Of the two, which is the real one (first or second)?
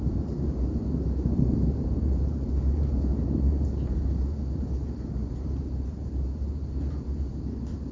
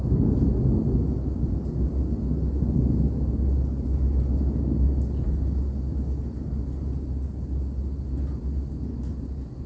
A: second